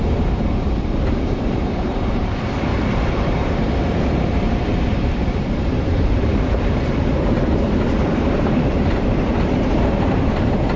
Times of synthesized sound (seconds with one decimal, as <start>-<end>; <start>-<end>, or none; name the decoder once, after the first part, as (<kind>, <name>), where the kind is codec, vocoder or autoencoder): 0.0-10.8 (vocoder, BigVGAN v2)